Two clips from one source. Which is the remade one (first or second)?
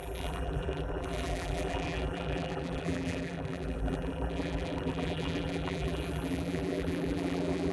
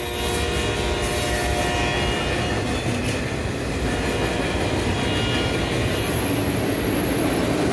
first